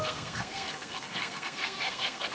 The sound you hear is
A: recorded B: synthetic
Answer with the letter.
B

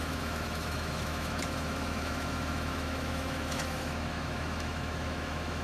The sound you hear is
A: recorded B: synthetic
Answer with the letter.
B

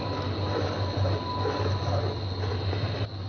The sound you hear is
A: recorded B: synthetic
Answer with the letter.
A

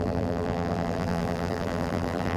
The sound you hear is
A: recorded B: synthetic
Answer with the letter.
B